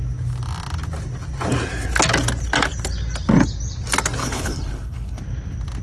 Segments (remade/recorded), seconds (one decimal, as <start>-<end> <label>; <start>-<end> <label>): 0.0-4.2 recorded; 4.2-5.2 remade; 5.2-5.8 recorded